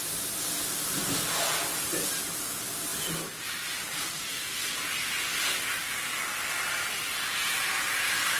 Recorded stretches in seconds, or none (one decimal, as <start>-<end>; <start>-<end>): 0.0-2.9; 4.5-8.4